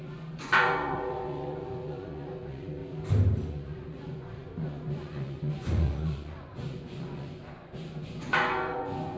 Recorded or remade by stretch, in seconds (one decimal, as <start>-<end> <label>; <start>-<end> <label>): 0.0-2.8 remade; 2.8-3.5 recorded; 3.5-9.2 remade